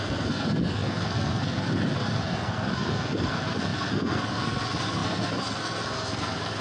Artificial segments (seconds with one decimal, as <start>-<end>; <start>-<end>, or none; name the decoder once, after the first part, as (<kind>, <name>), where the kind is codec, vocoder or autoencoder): 0.0-6.6 (codec, SNAC)